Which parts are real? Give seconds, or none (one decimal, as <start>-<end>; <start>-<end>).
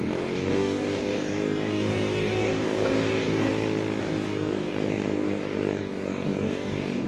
3.5-4.0